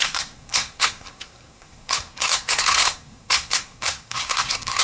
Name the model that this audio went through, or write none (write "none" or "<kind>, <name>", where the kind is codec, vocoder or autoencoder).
codec, SNAC